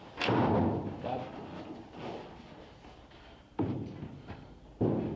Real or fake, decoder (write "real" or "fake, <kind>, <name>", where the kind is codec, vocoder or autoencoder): real